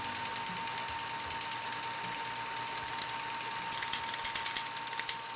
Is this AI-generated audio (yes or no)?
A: no